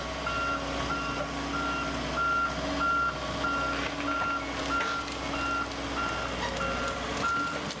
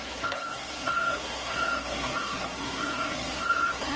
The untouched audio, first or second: first